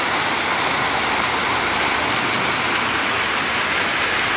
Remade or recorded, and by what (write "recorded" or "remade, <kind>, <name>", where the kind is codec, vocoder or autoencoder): recorded